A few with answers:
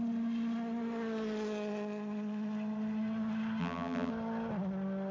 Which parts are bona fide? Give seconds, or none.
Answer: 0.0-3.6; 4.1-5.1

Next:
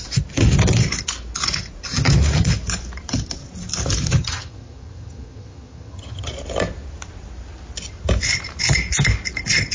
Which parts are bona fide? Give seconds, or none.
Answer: 0.0-4.2; 6.3-9.7

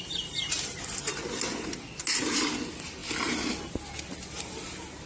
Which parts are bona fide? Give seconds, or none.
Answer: 0.0-5.1